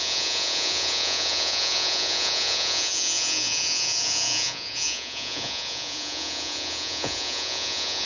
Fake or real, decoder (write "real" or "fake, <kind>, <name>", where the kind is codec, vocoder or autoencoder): fake, vocoder, Vocos